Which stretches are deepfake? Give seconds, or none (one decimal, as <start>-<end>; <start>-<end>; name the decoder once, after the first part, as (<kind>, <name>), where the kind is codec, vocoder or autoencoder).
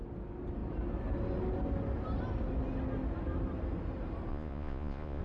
4.3-5.2 (vocoder, Vocos)